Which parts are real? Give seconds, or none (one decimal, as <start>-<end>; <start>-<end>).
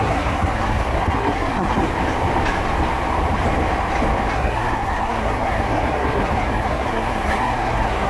1.9-4.3